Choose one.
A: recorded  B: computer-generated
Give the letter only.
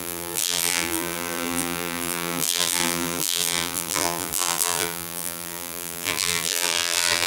B